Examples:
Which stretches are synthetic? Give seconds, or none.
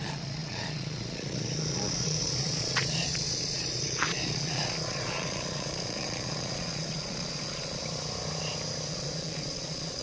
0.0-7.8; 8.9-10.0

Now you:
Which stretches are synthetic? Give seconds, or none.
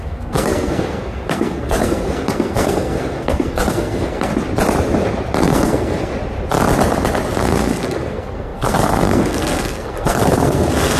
0.0-4.3; 5.4-6.1; 7.4-11.0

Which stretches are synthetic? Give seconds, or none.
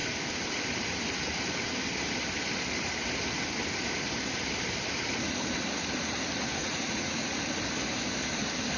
6.6-7.4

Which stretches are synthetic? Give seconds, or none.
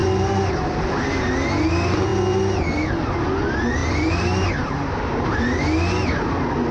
0.0-1.3; 3.8-5.6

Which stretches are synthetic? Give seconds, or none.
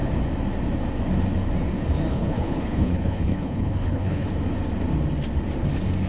2.1-4.3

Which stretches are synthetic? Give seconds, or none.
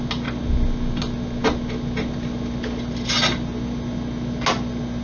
none